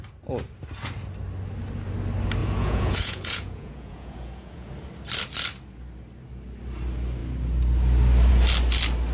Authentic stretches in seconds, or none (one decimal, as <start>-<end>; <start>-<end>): 0.0-2.4; 4.7-9.1